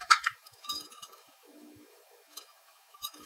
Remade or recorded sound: remade